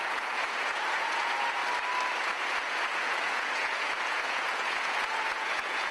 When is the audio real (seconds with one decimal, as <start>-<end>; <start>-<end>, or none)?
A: 1.6-2.2